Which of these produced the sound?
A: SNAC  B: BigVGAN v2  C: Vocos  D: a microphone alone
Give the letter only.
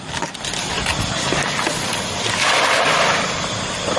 D